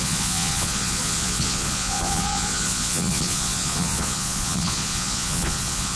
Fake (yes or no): yes